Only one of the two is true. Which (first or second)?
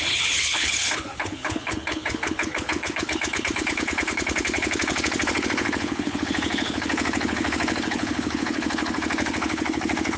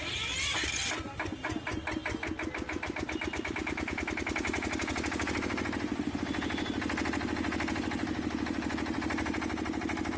second